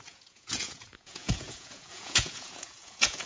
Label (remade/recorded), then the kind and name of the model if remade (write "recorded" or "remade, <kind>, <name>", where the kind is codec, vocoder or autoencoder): remade, vocoder, Vocos